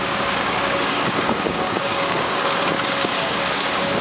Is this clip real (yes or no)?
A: no